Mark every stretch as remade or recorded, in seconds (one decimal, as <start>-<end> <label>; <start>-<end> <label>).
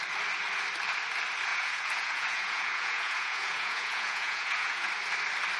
0.0-1.5 recorded; 1.5-4.9 remade; 4.9-5.6 recorded